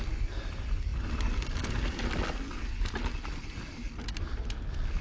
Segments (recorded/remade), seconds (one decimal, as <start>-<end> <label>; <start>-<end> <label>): 0.0-5.0 recorded